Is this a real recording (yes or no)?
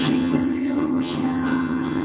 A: no